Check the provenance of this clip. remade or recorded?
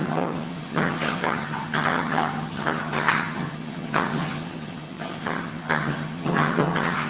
remade